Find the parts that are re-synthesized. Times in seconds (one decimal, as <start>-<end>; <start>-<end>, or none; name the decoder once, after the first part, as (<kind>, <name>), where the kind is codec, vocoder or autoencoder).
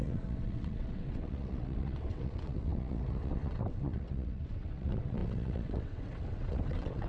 0.0-7.1 (vocoder, WaveNeXt)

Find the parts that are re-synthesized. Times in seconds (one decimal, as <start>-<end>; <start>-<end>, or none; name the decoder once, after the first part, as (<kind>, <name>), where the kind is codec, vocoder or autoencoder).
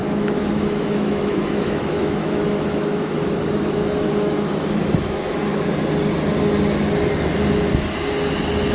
0.0-5.5 (autoencoder, DAC-VAE)